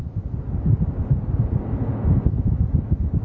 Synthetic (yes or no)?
no